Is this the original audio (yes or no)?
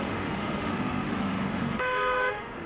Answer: no